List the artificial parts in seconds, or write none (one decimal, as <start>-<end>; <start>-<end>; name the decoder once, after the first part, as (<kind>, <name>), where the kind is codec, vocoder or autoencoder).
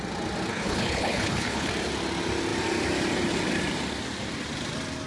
0.5-1.7 (codec, HILCodec)